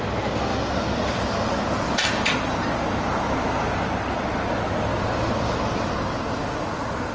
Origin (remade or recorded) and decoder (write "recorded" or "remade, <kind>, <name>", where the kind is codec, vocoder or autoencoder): recorded